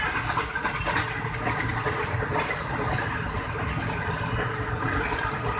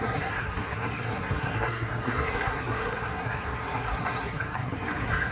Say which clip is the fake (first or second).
second